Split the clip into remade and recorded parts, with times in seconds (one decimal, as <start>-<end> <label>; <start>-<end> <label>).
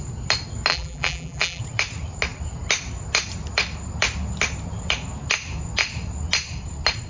0.0-0.7 recorded; 0.7-1.6 remade; 1.6-7.1 recorded